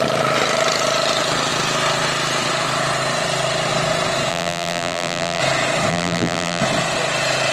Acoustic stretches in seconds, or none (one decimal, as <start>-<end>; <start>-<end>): 0.0-4.3; 5.4-5.9; 6.6-7.5